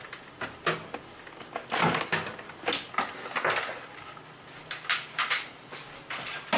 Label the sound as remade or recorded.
recorded